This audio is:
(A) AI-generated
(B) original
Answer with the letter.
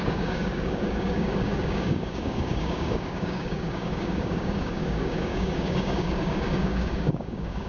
A